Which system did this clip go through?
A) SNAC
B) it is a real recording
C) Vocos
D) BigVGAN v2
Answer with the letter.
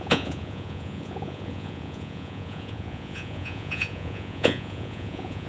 C